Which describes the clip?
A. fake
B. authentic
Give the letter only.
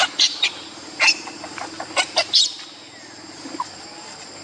B